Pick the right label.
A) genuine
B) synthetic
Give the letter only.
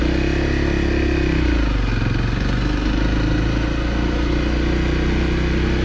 A